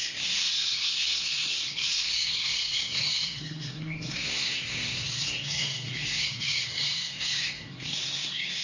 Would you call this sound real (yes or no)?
no